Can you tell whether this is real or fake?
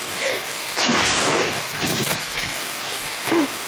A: fake